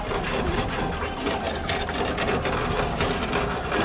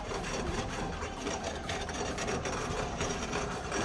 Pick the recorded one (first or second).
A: first